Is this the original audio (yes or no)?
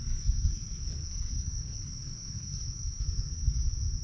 no